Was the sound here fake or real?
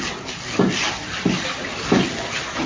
real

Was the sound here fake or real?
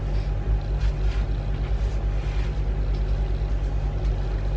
real